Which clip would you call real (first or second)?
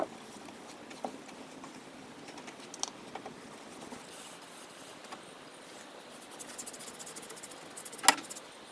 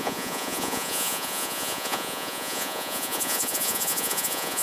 first